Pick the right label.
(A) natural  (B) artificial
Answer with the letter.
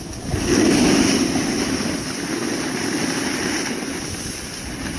A